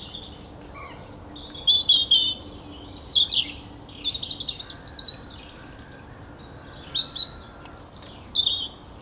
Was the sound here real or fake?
real